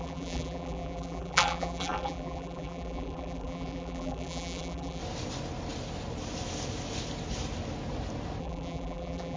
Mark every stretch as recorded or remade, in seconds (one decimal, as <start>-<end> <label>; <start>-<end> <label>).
0.0-5.0 remade; 5.0-8.4 recorded; 8.4-9.4 remade

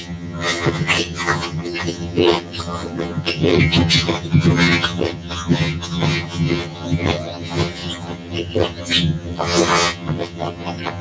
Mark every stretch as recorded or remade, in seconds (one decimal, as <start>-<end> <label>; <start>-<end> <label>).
0.0-11.0 remade

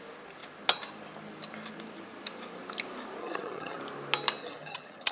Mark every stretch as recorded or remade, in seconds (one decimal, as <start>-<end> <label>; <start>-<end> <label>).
0.0-3.2 recorded; 3.2-3.8 remade; 3.8-4.4 recorded; 4.4-5.1 remade